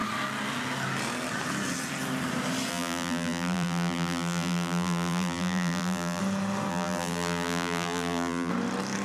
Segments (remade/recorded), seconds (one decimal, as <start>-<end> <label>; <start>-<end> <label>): 0.0-2.7 recorded; 2.7-6.2 remade; 6.2-6.7 recorded; 6.7-8.5 remade; 8.5-9.0 recorded